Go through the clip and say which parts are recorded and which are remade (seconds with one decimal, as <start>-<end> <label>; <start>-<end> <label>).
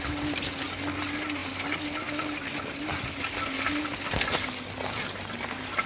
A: 0.0-5.9 recorded